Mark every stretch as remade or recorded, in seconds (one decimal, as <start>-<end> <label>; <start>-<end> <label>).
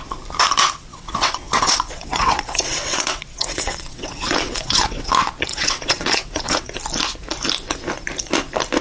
0.0-0.9 recorded; 0.9-5.1 remade; 5.1-5.5 recorded; 5.5-6.8 remade; 6.8-8.8 recorded